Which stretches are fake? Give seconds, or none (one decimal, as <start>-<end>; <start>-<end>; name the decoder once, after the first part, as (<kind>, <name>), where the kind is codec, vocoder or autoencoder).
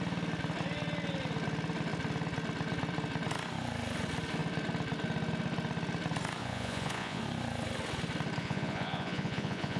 6.4-7.2 (vocoder, Vocos); 8.4-9.8